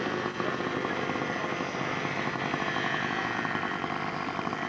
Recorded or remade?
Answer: recorded